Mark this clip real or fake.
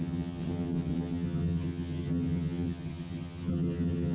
fake